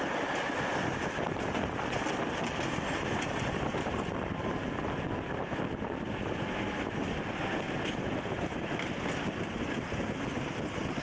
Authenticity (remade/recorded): recorded